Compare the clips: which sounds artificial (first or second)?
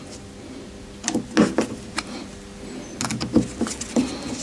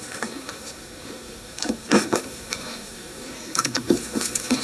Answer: second